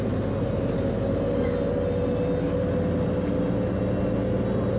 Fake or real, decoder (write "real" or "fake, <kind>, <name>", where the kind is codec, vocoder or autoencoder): real